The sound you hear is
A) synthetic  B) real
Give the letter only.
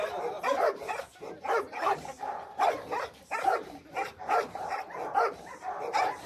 A